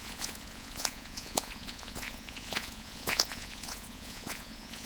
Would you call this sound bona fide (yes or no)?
no